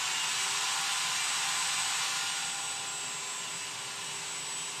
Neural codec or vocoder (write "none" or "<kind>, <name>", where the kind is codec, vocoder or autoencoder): none